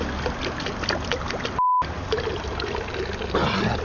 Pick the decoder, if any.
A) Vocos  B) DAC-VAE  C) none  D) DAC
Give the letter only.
C